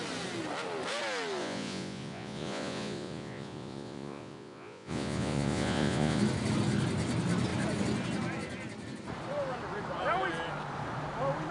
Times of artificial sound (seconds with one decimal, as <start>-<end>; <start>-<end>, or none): 1.4-6.2